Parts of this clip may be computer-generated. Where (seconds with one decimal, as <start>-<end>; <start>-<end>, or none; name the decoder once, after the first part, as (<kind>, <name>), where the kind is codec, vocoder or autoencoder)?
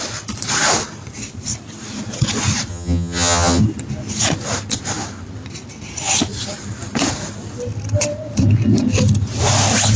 2.7-3.6 (vocoder, HiFi-GAN)